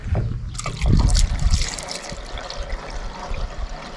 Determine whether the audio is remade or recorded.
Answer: recorded